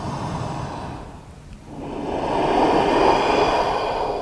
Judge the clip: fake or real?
real